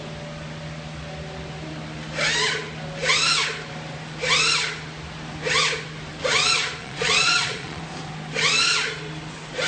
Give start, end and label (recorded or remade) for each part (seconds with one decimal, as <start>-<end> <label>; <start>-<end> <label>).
0.0-6.8 recorded; 6.8-7.8 remade; 7.8-9.7 recorded